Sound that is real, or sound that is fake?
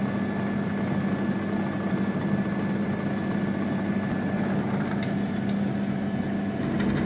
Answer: real